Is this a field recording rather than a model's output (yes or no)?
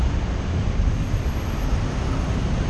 yes